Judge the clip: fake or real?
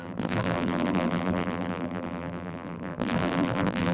fake